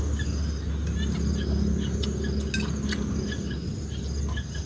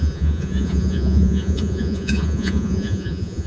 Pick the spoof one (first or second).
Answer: second